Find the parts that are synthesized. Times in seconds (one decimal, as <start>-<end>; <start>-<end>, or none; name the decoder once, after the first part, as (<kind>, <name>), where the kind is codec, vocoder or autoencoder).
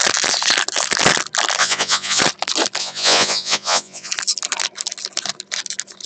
1.6-2.2 (vocoder, Vocos); 2.8-4.1